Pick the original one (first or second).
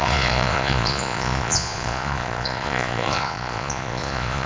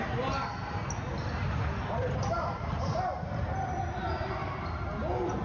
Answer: second